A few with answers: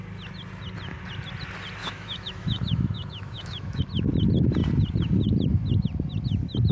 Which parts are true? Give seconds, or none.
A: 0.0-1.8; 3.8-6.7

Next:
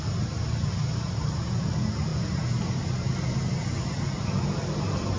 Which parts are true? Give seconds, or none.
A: 0.0-5.2

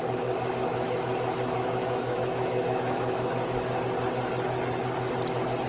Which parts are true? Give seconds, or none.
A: 0.0-0.7; 3.8-5.7

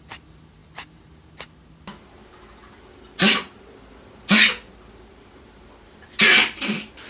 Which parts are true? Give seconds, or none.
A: 0.0-7.1

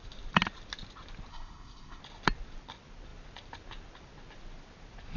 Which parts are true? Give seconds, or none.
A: 0.0-1.3; 2.0-5.2

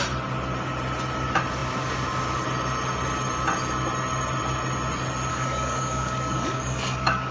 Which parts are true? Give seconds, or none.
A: 0.0-5.3

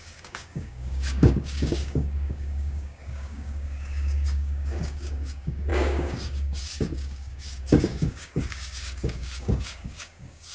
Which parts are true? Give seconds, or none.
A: none

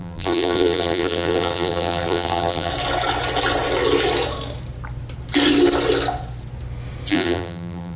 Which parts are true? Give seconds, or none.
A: 2.7-7.1